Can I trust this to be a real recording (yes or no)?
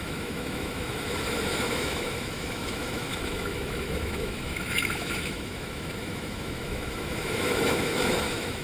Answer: no